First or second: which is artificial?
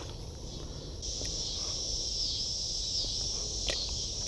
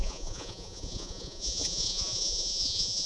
second